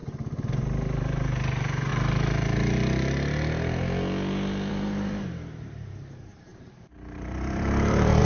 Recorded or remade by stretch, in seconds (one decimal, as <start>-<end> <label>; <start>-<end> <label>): 0.0-0.6 recorded; 0.6-1.9 remade; 1.9-4.7 recorded; 4.7-8.2 remade

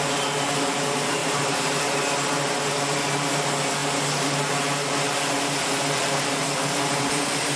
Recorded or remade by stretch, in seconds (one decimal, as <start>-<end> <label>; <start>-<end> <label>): 0.0-1.2 recorded; 1.2-1.8 remade; 1.8-7.6 recorded

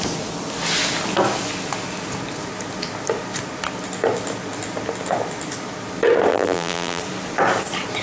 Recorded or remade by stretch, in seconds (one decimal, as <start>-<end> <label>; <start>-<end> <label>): 0.0-6.3 recorded; 6.3-7.0 remade; 7.0-8.0 recorded